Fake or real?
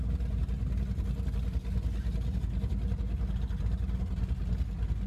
real